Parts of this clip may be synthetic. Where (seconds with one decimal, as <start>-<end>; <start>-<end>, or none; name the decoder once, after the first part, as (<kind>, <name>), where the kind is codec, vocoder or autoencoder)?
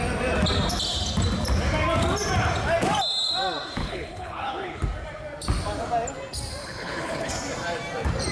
3.8-4.8 (codec, HILCodec); 6.6-7.3